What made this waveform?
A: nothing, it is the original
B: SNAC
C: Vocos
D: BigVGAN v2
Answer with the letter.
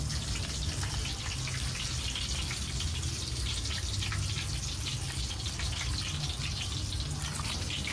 A